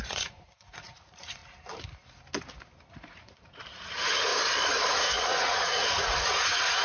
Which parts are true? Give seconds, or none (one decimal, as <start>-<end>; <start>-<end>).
1.4-2.9; 4.3-5.0